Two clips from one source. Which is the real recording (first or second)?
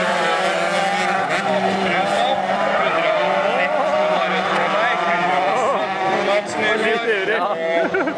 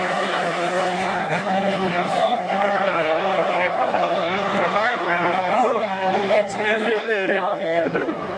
first